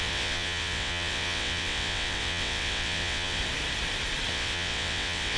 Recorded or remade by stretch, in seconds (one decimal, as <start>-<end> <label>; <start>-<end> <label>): 0.0-3.4 remade; 3.4-4.3 recorded; 4.3-5.4 remade